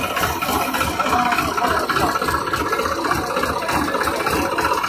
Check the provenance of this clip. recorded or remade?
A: recorded